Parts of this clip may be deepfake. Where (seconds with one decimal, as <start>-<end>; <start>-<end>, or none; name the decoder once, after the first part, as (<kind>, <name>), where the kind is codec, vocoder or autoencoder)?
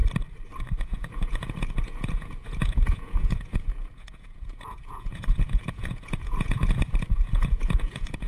0.8-8.3 (vocoder, Vocos)